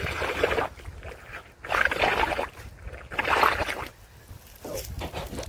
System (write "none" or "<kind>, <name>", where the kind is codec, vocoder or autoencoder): none